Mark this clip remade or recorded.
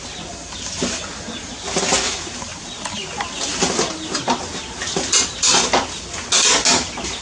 recorded